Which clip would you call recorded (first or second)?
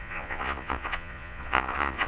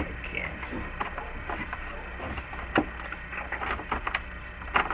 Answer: second